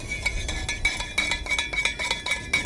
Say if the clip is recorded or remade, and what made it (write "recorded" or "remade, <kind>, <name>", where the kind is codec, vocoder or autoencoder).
recorded